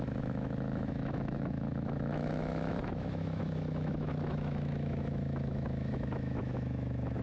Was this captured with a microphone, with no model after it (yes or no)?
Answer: no